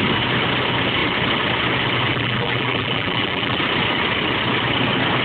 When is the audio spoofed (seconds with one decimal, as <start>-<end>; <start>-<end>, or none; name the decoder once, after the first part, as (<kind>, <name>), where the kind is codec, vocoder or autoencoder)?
2.1-3.6 (vocoder, BigVGAN v2)